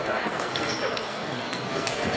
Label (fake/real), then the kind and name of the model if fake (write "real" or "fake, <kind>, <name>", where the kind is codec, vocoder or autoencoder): fake, codec, SNAC